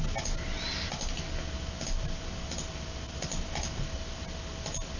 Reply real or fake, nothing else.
real